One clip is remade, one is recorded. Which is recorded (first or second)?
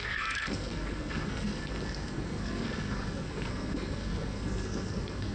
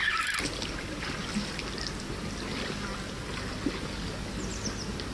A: second